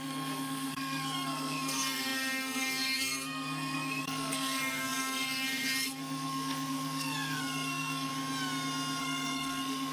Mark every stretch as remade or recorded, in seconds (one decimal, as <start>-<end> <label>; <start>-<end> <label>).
0.0-8.1 remade; 8.1-9.0 recorded; 9.0-9.9 remade